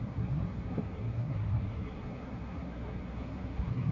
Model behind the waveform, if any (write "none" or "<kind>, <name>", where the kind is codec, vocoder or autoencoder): codec, SNAC